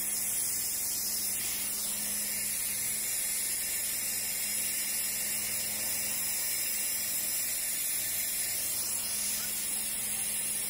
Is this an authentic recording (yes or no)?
yes